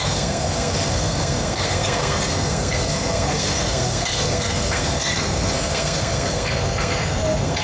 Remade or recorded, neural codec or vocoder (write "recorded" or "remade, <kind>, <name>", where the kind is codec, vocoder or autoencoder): remade, codec, SNAC